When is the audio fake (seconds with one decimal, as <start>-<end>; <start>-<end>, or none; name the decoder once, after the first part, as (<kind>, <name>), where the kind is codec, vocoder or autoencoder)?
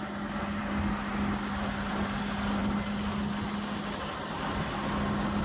none